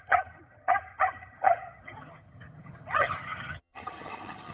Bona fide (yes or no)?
no